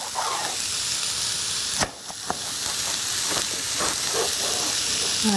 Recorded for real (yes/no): yes